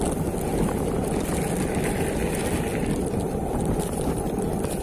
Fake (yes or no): no